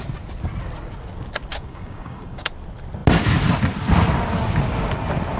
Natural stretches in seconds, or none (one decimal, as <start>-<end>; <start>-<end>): 0.0-1.5; 2.5-5.4